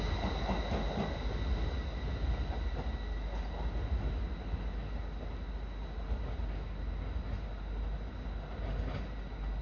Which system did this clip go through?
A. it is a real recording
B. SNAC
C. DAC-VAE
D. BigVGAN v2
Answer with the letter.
A